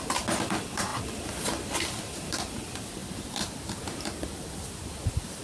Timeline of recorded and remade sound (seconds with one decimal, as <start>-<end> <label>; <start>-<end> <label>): 0.0-5.4 recorded